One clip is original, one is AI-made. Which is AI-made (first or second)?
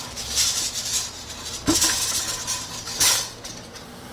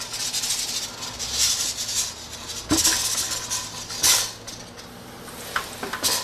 first